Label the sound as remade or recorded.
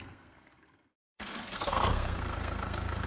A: remade